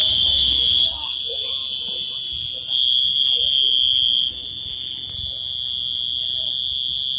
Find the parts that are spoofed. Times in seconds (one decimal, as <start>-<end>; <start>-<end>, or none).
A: 0.0-1.2